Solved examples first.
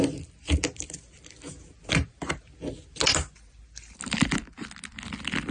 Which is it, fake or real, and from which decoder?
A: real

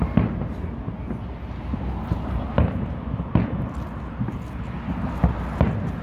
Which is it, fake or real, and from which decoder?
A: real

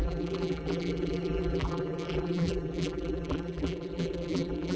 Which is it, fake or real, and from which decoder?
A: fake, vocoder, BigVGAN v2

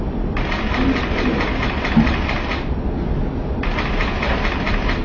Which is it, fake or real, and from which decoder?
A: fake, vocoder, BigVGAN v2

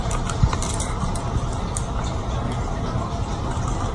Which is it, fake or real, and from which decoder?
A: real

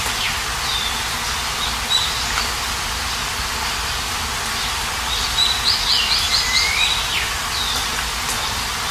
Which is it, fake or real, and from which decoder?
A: real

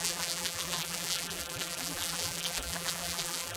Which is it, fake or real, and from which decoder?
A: fake, vocoder, BigVGAN v2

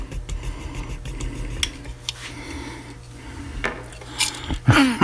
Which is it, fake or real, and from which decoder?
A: real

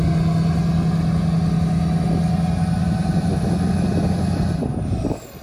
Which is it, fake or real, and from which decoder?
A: real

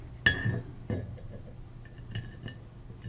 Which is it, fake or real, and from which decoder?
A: real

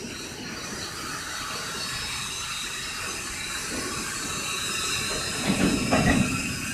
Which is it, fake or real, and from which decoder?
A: real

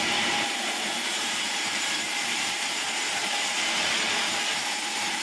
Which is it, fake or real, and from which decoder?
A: fake, vocoder, BigVGAN v2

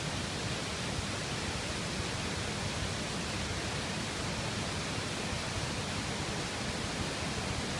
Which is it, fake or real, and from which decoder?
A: real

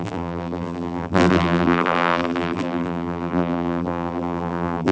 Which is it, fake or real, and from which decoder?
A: fake, vocoder, BigVGAN v2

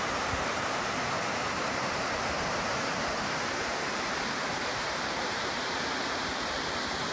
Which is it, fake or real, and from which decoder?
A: fake, vocoder, BigVGAN v2